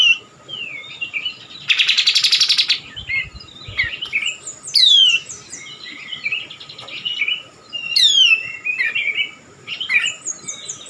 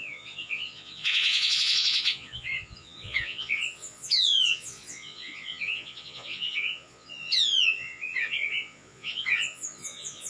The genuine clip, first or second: first